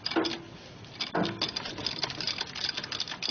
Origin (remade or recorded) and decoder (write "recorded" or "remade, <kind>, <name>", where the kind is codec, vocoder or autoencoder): recorded